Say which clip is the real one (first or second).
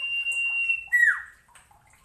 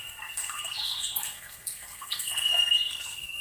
first